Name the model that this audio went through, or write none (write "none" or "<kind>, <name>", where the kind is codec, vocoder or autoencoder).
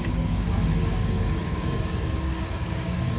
codec, DAC